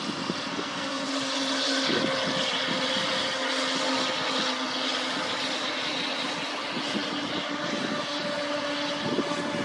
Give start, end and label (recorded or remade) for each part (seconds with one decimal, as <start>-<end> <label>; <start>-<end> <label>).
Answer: 0.0-0.5 recorded; 0.5-1.1 remade; 1.1-9.6 recorded